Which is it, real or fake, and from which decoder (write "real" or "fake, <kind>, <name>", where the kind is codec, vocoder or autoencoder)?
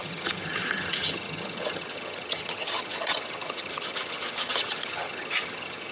fake, vocoder, HiFi-GAN